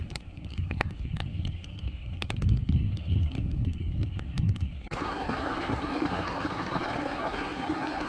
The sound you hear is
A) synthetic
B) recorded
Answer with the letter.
A